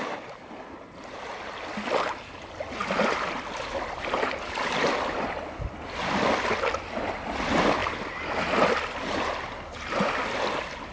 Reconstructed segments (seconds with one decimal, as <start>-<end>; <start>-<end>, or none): none